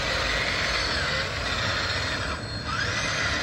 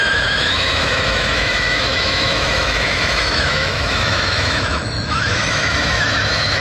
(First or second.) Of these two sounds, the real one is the first